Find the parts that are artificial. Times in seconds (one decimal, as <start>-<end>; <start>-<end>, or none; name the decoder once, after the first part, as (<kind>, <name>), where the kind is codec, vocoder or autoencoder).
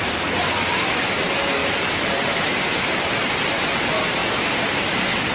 1.6-3.6 (vocoder, BigVGAN v2)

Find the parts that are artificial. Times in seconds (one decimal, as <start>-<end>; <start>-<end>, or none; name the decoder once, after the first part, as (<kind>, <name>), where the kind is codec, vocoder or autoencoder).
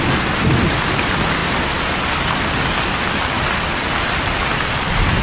none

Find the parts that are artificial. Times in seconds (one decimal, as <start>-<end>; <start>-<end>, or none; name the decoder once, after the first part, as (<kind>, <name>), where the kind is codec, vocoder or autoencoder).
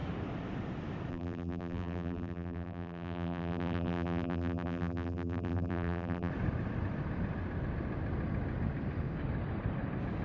1.1-6.3 (vocoder, BigVGAN v2)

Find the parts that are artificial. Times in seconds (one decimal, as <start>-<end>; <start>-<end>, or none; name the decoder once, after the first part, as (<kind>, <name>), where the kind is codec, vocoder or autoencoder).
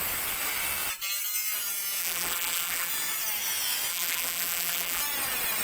2.0-2.9 (vocoder, BigVGAN v2); 3.9-5.0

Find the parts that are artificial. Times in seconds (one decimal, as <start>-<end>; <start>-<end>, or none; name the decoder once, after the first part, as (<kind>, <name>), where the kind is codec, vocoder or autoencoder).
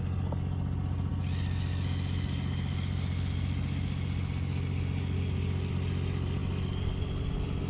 none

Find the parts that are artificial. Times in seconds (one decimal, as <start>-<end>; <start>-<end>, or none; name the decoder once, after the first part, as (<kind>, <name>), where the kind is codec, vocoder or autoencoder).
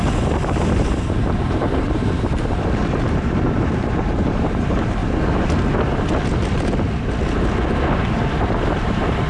0.0-5.0 (vocoder, BigVGAN v2); 8.4-9.3